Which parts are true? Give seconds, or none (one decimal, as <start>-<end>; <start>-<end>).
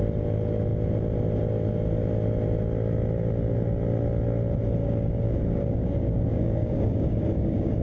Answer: 0.0-4.8